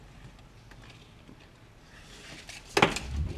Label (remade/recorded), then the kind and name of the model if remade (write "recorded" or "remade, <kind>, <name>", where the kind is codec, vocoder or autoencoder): recorded